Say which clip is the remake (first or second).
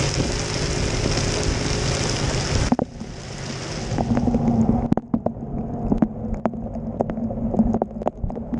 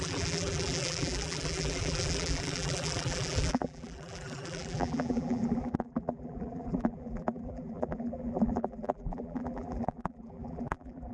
second